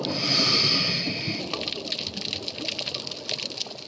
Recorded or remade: recorded